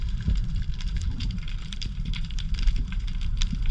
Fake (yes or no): yes